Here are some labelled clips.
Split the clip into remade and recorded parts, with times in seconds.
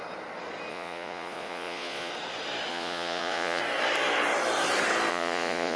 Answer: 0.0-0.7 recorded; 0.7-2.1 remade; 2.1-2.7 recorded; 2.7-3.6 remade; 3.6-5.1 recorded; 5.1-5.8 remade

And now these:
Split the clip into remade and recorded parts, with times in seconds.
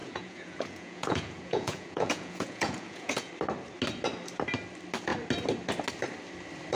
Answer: 0.0-3.3 remade; 3.3-6.8 recorded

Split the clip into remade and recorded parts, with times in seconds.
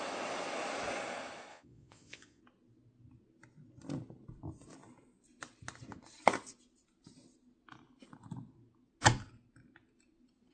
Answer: 0.0-1.5 recorded; 1.5-2.4 remade; 2.4-10.5 recorded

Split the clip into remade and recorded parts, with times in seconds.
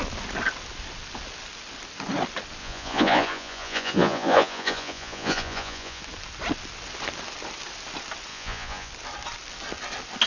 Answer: 0.0-2.6 recorded; 2.6-6.0 remade; 6.0-8.3 recorded; 8.3-8.9 remade; 8.9-10.3 recorded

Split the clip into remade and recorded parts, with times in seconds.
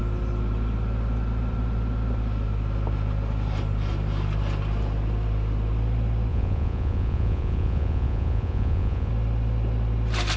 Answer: 0.0-6.3 recorded; 6.3-9.1 remade; 9.1-10.4 recorded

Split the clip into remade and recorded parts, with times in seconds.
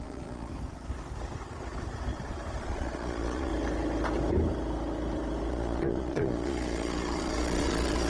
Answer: 0.0-0.5 remade; 0.5-2.6 recorded; 2.6-3.5 remade; 3.5-5.5 recorded; 5.5-8.1 remade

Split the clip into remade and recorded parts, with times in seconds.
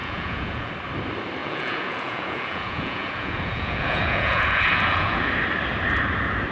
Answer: 0.0-0.7 remade; 0.7-1.4 recorded; 1.4-5.3 remade; 5.3-6.5 recorded